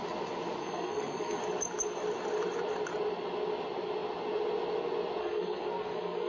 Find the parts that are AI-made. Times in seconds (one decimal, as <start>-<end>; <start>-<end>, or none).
0.6-1.4; 5.2-6.3